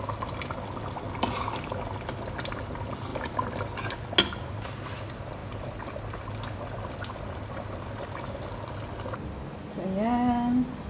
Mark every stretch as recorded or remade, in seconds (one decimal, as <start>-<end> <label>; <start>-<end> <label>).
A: 0.0-10.9 recorded